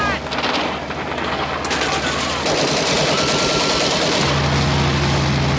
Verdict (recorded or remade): recorded